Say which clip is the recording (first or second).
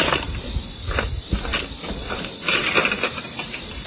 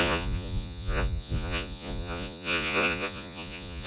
first